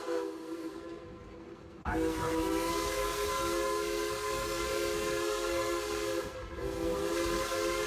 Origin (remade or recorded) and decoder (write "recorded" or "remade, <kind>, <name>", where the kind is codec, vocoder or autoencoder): remade, codec, SNAC